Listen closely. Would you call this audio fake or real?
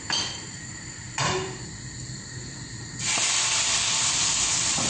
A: fake